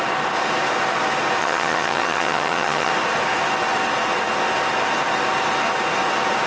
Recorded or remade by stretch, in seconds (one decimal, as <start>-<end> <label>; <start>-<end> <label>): 0.0-1.4 recorded; 1.4-2.9 remade; 2.9-6.5 recorded